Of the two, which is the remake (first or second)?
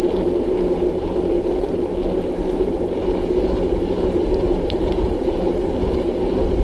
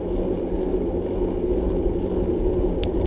first